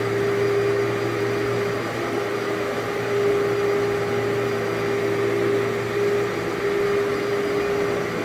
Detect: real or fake real